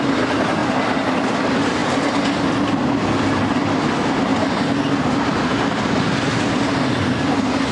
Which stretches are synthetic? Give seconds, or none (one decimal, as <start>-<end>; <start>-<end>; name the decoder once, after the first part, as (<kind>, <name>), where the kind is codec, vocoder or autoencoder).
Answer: none